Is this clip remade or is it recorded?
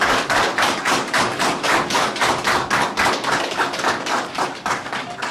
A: remade